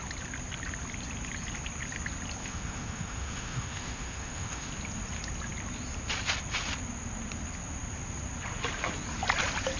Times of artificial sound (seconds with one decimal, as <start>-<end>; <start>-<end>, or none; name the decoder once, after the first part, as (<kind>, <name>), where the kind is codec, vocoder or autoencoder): 2.4-4.7 (autoencoder, DAC-VAE)